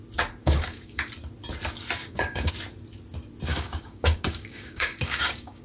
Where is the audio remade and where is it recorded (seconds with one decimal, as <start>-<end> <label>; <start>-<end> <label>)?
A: 0.0-0.4 recorded; 0.4-1.1 remade; 1.1-2.0 recorded; 2.0-2.5 remade; 2.5-3.5 recorded; 3.5-5.6 remade